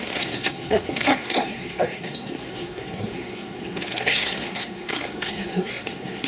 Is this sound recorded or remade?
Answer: remade